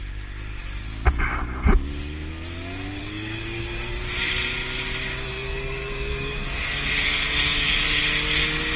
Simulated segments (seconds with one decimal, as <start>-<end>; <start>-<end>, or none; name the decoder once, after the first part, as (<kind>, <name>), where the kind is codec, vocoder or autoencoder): 3.0-3.9 (codec, SNAC); 5.3-8.0